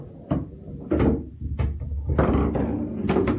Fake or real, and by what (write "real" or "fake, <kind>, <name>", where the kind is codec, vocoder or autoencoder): real